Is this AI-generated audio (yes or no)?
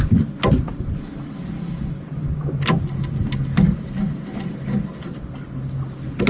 no